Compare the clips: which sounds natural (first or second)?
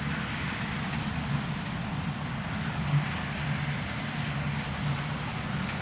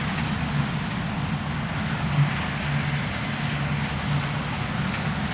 second